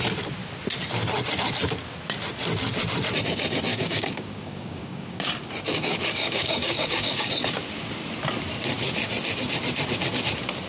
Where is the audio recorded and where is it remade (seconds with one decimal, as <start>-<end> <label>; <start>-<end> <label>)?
0.0-3.7 recorded; 3.7-5.3 remade; 5.3-5.7 recorded; 5.7-7.3 remade; 7.3-10.7 recorded